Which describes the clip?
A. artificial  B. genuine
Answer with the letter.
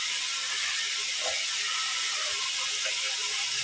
B